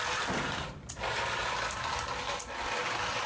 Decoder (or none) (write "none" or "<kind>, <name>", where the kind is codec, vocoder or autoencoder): none